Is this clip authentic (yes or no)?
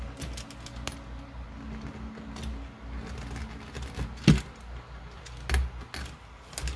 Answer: yes